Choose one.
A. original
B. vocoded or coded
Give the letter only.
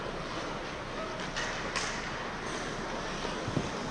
A